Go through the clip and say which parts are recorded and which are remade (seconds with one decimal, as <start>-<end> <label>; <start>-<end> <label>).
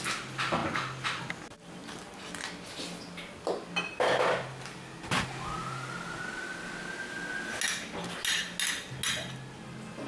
0.0-10.1 recorded